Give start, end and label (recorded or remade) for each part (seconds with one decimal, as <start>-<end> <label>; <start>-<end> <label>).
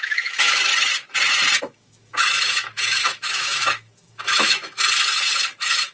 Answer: 0.0-0.7 remade; 0.7-1.6 recorded; 1.6-5.9 remade